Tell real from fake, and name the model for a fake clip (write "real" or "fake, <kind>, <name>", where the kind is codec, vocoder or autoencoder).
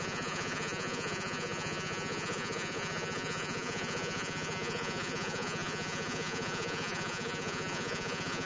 fake, vocoder, Vocos